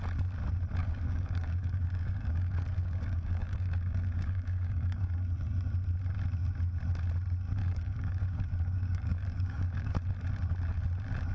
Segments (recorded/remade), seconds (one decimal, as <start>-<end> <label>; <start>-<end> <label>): 0.0-0.8 recorded; 0.8-5.1 remade; 5.1-7.6 recorded; 7.6-9.9 remade; 9.9-11.3 recorded